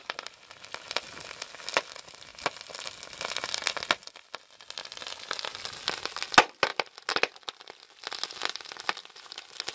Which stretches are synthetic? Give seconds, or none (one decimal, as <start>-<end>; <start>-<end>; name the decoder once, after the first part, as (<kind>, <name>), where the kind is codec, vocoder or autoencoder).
none